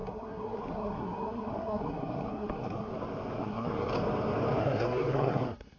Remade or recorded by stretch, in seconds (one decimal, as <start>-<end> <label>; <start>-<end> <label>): 0.0-2.9 remade; 2.9-3.4 recorded; 3.4-3.9 remade; 3.9-4.6 recorded; 4.6-5.8 remade